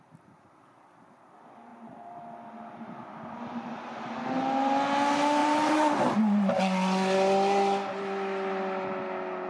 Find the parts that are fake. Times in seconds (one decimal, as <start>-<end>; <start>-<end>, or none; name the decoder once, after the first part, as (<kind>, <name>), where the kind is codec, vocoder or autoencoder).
5.4-6.6 (vocoder, BigVGAN v2)